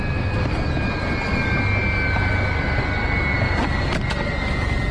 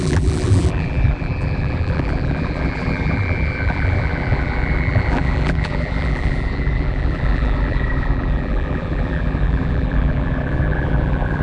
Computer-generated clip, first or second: second